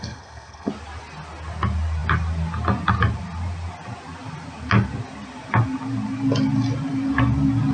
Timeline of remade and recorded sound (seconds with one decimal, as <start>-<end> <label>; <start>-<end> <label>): 0.0-0.7 remade; 0.7-7.7 recorded